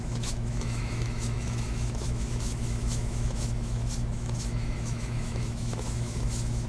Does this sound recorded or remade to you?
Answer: remade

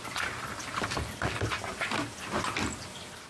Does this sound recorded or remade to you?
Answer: recorded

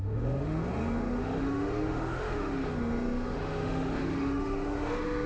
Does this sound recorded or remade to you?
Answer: remade